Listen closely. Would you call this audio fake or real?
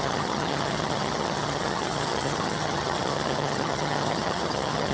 fake